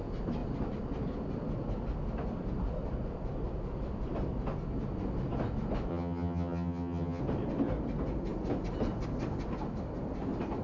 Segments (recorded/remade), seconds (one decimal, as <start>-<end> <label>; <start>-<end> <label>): 0.0-5.9 recorded; 5.9-7.2 remade; 7.2-10.6 recorded